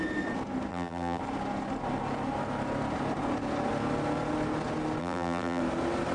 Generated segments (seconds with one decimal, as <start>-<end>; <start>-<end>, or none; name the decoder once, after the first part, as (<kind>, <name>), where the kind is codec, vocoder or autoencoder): 0.7-1.2 (vocoder, BigVGAN v2); 5.0-5.6